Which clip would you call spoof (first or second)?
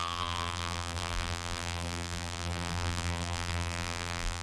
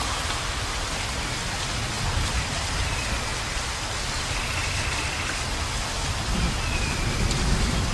first